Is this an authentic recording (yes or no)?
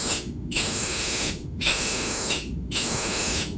no